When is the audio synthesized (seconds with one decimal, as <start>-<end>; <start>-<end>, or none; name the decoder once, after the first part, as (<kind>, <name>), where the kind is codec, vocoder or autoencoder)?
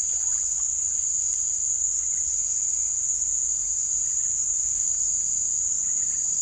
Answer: 0.0-3.6 (vocoder, Vocos); 5.7-6.4